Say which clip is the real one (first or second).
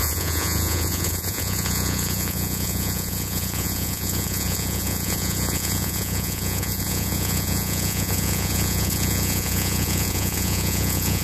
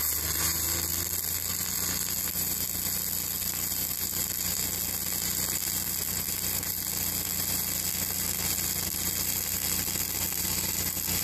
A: second